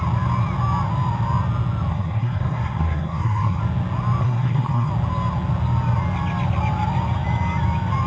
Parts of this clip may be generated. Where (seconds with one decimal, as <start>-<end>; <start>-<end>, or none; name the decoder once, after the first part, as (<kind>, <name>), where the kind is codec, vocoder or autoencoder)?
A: 1.9-3.6 (codec, SNAC); 4.2-4.9

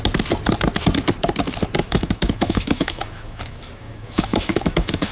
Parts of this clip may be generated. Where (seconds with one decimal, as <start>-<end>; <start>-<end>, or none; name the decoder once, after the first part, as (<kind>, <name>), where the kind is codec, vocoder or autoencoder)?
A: 1.8-5.1 (autoencoder, DAC-VAE)

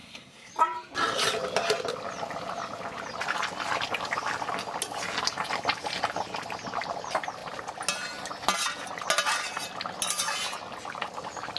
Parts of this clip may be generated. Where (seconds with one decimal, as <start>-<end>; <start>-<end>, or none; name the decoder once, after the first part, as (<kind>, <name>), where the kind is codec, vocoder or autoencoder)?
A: 0.0-0.5 (codec, SNAC)

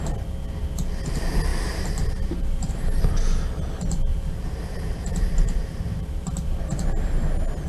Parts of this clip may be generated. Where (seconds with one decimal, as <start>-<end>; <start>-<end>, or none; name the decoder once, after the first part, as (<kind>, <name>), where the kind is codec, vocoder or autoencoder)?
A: 1.5-2.7 (vocoder, BigVGAN v2); 4.1-6.6

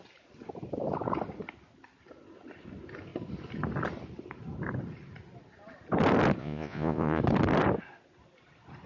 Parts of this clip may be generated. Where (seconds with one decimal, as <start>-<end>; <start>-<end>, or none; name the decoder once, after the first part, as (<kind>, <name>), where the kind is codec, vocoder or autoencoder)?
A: 6.4-7.2 (vocoder, Vocos)